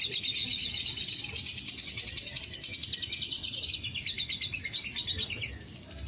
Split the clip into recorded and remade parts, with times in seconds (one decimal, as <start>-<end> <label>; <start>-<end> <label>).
0.0-0.4 recorded; 0.4-2.4 remade; 2.4-6.1 recorded